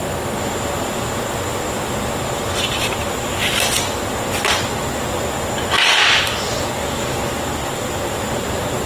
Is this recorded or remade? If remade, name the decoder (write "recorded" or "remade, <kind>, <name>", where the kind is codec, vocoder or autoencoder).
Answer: recorded